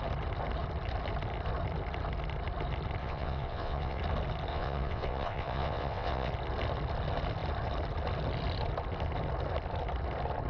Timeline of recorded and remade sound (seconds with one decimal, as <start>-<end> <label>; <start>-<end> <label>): 0.0-3.0 recorded; 3.0-4.0 remade; 4.0-4.5 recorded; 4.5-6.3 remade; 6.3-10.5 recorded